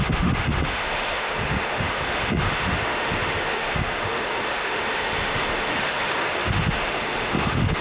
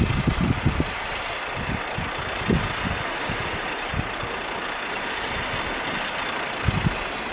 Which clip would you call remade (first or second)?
first